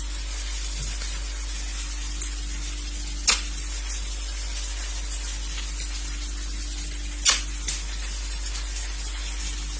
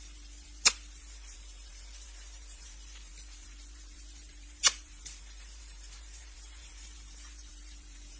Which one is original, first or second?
first